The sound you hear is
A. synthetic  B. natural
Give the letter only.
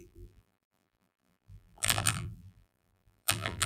A